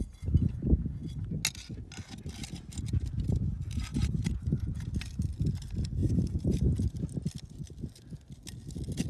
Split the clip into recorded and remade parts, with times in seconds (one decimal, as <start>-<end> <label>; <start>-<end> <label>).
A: 0.0-3.9 recorded; 3.9-4.9 remade; 4.9-6.0 recorded; 6.0-6.9 remade; 6.9-9.1 recorded